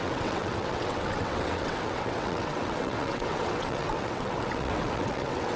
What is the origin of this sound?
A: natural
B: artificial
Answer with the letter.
B